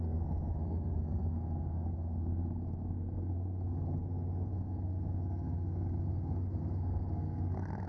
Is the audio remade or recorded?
remade